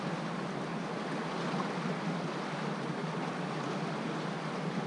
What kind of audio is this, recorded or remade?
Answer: recorded